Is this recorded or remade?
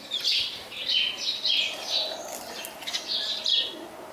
recorded